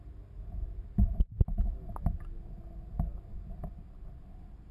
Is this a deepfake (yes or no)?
no